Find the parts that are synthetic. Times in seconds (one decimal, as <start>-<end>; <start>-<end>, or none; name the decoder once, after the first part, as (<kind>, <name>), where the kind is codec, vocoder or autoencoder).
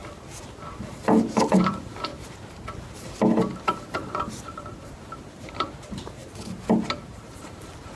1.2-2.1 (vocoder, BigVGAN v2); 2.9-6.2; 7.1-8.0